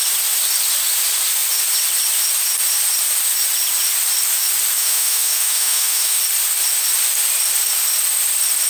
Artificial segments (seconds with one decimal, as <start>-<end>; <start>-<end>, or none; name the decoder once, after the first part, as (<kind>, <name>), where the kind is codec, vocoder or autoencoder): 4.8-6.2 (autoencoder, DAC-VAE)